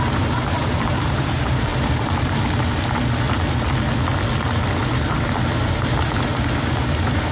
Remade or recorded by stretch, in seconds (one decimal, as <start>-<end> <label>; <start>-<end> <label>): 0.0-1.7 remade; 1.7-6.1 recorded; 6.1-7.3 remade